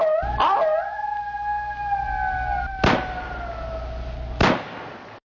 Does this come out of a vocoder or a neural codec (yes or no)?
no